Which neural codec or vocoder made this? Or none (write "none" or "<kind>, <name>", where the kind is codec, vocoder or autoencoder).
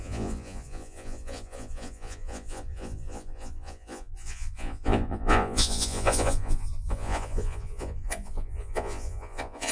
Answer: vocoder, Vocos